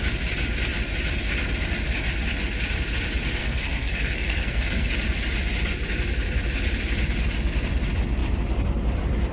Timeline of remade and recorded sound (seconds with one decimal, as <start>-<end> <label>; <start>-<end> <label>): 0.0-3.4 recorded; 3.4-4.9 remade; 4.9-9.3 recorded